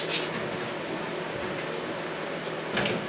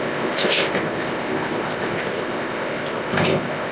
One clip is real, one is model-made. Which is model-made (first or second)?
second